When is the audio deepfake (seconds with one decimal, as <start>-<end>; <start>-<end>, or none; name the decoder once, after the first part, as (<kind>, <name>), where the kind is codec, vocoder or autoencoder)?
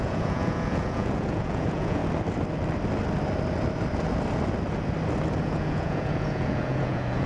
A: 0.0-2.0 (vocoder, Vocos); 5.4-7.3